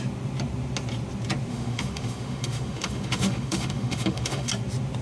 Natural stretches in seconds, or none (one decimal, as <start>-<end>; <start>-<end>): 0.0-1.5; 4.5-5.0